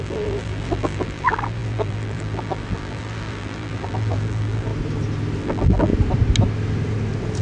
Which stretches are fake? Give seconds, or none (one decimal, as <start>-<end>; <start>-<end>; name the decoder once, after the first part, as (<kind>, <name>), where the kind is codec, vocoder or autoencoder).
0.0-4.7 (vocoder, BigVGAN v2); 5.4-5.9